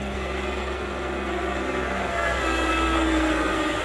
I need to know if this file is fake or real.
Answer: fake